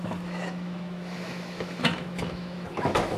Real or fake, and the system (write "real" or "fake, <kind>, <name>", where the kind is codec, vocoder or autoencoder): fake, autoencoder, DAC-VAE